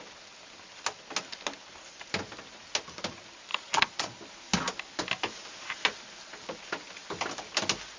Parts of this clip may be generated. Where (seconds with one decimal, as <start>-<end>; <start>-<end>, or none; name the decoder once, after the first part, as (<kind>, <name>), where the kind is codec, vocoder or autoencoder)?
3.5-4.2 (vocoder, Vocos)